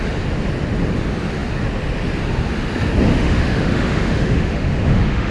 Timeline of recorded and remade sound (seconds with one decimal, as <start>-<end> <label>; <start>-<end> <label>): 0.0-3.1 recorded; 3.1-5.3 remade